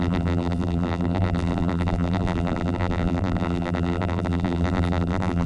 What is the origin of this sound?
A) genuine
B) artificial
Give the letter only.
B